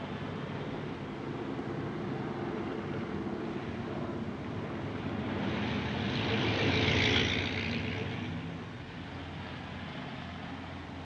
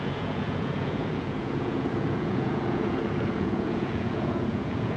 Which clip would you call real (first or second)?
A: first